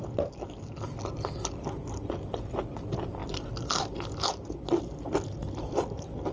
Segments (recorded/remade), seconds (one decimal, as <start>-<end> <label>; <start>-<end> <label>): 0.0-6.3 recorded